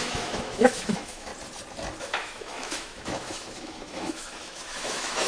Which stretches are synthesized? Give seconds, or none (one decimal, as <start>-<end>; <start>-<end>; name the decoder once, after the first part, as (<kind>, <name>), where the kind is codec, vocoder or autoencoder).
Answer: 0.0-1.3 (autoencoder, DAC-VAE); 2.0-5.3